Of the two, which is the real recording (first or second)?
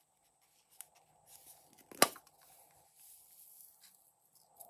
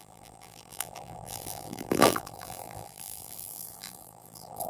first